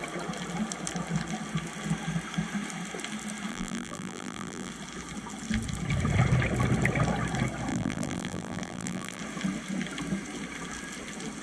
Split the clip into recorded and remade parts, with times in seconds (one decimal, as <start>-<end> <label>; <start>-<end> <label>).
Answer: 0.0-3.5 recorded; 3.5-4.7 remade; 4.7-7.7 recorded; 7.7-9.2 remade; 9.2-11.4 recorded